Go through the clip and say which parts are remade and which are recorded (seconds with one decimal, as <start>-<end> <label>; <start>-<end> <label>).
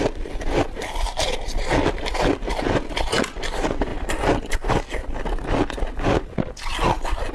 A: 0.0-3.9 remade; 3.9-4.5 recorded; 4.5-5.0 remade; 5.0-7.3 recorded